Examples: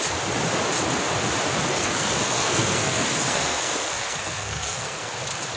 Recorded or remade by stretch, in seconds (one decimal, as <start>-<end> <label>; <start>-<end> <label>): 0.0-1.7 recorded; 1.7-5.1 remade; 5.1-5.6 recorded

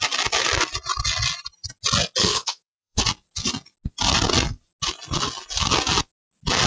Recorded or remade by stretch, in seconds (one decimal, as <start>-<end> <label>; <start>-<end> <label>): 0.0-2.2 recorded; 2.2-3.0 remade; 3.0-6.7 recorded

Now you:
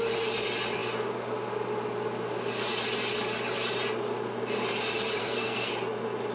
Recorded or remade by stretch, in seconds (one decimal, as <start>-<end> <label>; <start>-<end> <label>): 0.0-5.2 recorded; 5.2-5.7 remade; 5.7-6.3 recorded